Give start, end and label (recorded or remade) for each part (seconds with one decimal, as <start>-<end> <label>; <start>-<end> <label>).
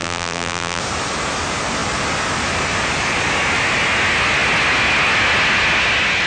0.0-0.8 remade; 0.8-6.3 recorded